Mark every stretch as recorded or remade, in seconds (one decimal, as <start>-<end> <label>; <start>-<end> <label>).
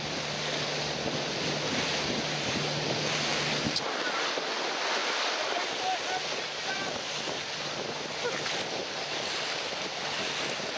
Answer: 0.0-3.3 recorded; 3.3-3.9 remade; 3.9-5.0 recorded; 5.0-5.8 remade; 5.8-10.8 recorded